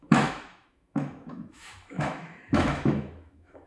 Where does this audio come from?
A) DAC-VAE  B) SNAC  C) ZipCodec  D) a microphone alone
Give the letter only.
A